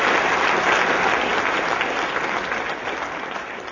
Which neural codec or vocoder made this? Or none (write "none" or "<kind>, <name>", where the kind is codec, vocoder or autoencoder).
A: none